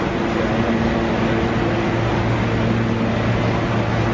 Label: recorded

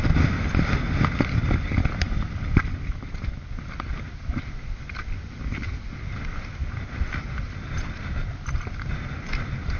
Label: recorded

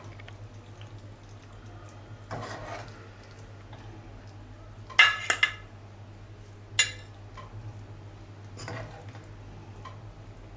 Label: recorded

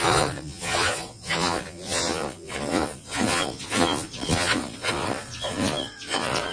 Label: remade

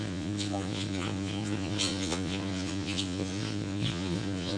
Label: remade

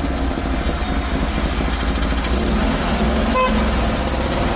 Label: recorded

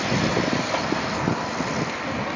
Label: recorded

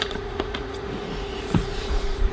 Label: remade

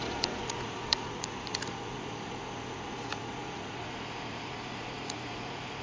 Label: remade